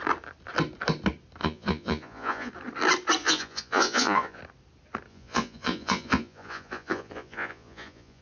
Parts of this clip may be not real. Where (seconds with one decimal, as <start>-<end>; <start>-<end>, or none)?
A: 1.4-2.5; 3.2-4.4; 5.1-8.2